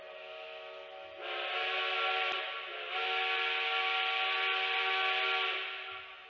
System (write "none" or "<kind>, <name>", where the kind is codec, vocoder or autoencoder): none